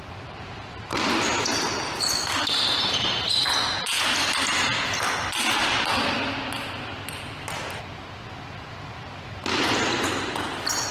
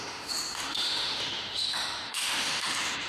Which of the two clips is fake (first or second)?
second